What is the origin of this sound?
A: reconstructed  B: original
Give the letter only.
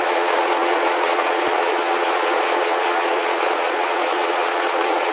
A